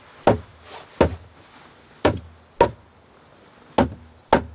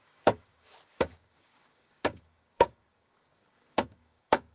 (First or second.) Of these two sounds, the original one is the first